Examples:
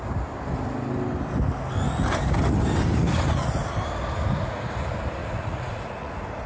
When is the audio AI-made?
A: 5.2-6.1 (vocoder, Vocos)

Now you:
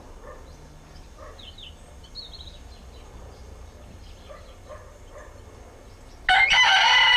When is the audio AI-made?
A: none

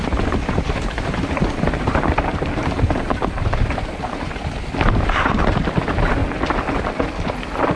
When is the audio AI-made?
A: 0.0-4.4 (vocoder, BigVGAN v2); 4.9-6.2